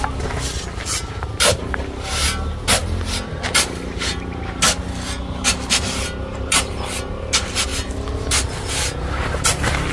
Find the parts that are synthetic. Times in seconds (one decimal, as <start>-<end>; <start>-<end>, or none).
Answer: none